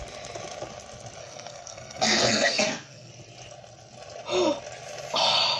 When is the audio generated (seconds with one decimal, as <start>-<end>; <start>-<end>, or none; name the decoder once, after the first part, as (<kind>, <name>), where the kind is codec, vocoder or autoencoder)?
1.2-3.1 (codec, SNAC)